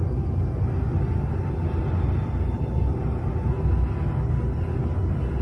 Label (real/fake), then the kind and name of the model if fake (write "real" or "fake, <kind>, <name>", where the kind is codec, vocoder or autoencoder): real